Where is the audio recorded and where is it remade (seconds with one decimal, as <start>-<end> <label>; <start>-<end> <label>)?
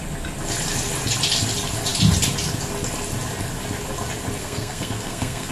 0.0-4.4 recorded; 4.4-5.5 remade